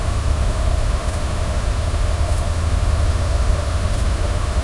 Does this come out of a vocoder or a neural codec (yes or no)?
yes